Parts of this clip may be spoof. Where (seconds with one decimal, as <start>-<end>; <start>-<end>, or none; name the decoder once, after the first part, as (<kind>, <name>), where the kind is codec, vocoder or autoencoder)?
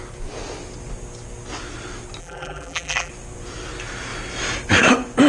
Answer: 2.2-3.1 (vocoder, BigVGAN v2)